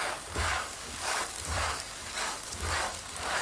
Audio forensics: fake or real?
fake